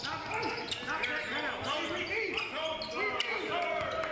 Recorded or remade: recorded